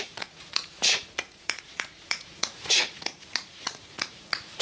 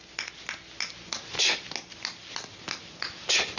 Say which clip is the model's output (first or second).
first